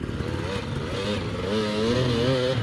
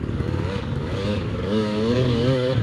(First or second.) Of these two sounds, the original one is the first